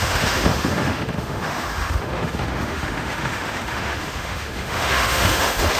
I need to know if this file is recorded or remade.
remade